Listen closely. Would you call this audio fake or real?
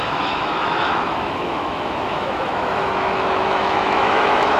fake